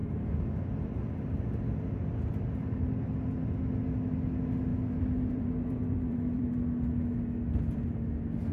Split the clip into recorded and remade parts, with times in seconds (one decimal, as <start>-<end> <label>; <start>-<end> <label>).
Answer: 0.0-4.7 recorded; 4.7-6.4 remade; 6.4-8.5 recorded